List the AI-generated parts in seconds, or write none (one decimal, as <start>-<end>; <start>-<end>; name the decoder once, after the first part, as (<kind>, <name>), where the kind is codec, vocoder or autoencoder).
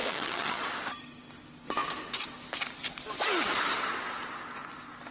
0.0-0.6 (vocoder, HiFi-GAN)